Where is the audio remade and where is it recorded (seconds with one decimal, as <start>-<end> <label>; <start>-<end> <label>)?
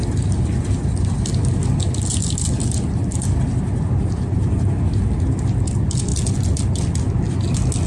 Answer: 0.0-7.9 recorded